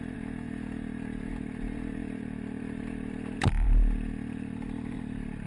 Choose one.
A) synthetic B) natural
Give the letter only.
A